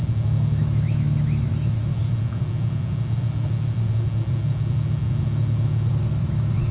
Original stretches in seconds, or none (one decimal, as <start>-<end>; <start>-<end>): 0.0-0.6; 1.9-5.9